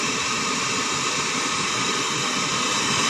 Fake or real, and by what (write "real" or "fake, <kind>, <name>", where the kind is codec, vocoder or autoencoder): fake, vocoder, BigVGAN v2